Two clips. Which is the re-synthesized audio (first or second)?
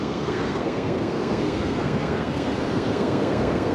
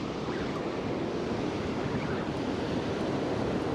first